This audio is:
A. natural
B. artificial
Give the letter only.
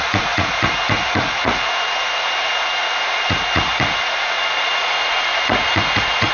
B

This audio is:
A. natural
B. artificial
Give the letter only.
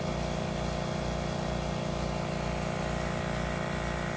A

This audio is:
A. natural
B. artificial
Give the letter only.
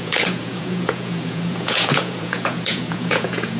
B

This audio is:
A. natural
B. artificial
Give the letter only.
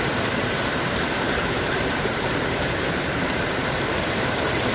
B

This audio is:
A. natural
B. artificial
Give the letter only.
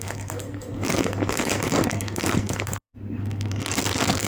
B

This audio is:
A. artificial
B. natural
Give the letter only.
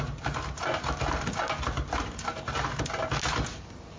B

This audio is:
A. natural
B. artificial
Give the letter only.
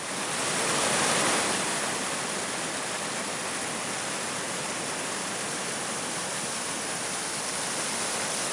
A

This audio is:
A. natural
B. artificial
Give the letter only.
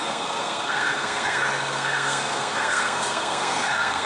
B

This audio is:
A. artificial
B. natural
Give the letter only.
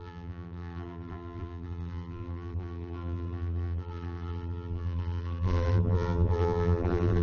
A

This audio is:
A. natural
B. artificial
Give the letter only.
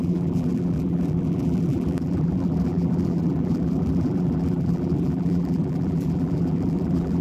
B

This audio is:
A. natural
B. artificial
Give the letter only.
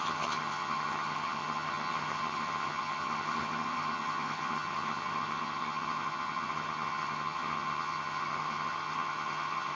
B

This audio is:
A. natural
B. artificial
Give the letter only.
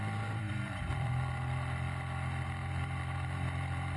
B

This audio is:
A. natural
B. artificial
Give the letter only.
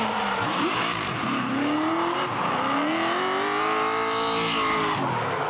A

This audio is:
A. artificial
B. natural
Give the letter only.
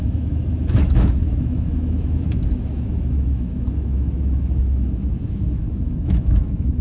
A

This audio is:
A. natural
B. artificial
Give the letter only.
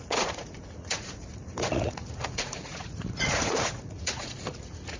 B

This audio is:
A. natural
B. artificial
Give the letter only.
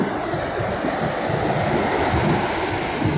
A